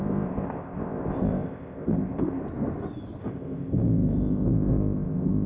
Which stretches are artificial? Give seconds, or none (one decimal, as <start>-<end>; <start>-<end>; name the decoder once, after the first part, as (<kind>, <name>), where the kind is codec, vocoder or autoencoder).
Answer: 0.0-2.4 (codec, ZipCodec); 3.2-5.5